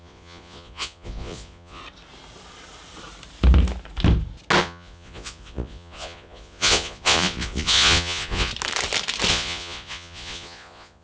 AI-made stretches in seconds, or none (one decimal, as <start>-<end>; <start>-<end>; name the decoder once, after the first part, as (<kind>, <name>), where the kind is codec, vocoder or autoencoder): 0.0-1.8 (vocoder, Vocos); 4.6-8.5; 9.3-11.0